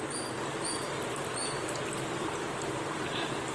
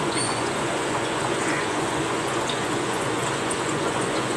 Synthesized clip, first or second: second